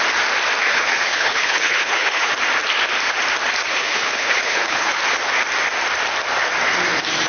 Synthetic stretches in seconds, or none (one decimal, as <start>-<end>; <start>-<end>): 0.7-2.3; 3.7-5.0